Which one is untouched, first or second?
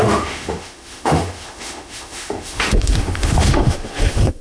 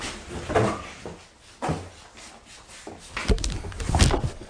second